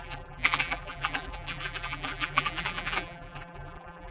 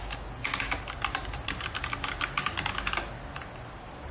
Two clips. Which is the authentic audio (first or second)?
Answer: second